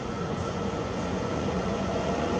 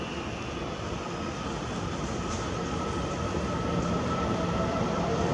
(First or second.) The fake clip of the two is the first